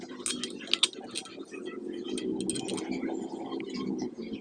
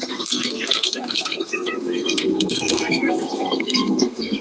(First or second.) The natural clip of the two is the first